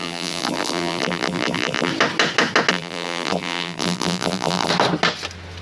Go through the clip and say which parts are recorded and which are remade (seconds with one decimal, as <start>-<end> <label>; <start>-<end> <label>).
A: 0.0-1.9 remade; 1.9-2.7 recorded; 2.7-4.7 remade; 4.7-5.6 recorded